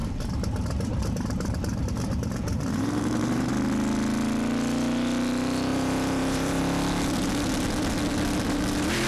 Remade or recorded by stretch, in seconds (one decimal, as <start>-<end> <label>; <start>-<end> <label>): 0.0-3.5 remade; 3.5-5.7 recorded; 5.7-6.6 remade; 6.6-9.1 recorded

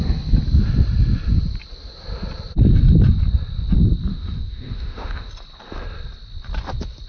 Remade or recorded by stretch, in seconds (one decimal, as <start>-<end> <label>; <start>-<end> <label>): 0.0-4.1 recorded; 4.1-5.3 remade; 5.3-7.1 recorded